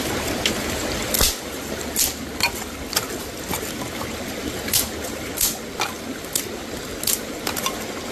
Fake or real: real